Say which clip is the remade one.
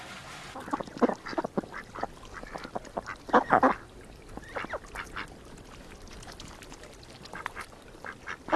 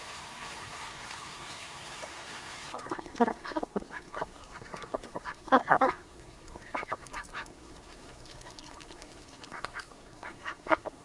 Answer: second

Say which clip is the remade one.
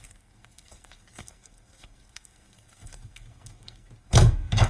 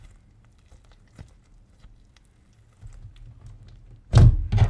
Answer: first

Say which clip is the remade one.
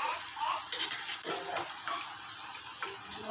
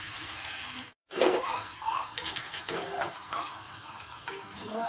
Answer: second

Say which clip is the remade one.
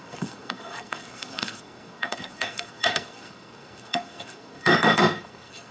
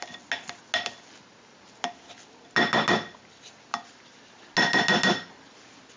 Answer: first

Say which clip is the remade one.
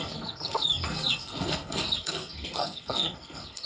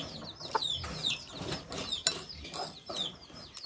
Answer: first